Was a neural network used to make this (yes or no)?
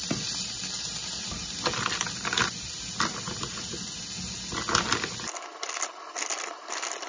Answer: no